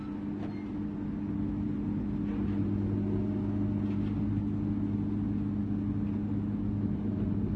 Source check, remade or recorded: recorded